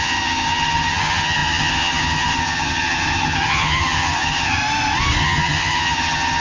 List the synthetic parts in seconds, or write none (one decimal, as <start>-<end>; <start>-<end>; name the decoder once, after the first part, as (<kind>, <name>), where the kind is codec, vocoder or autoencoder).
0.0-4.6 (vocoder, HiFi-GAN); 5.2-6.4